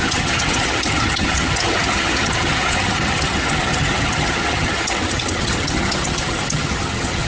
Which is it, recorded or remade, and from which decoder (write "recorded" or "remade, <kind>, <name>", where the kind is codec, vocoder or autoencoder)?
remade, vocoder, HiFi-GAN